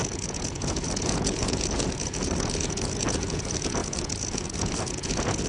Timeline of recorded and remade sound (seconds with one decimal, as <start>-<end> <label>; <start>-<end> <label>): 0.0-5.5 remade